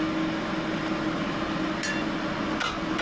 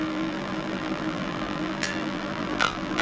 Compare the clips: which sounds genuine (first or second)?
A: first